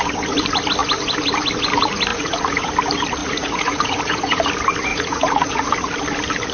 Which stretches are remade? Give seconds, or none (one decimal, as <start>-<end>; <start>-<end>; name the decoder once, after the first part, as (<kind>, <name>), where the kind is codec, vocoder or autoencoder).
2.1-2.7 (vocoder, Vocos); 3.2-4.4; 4.9-5.7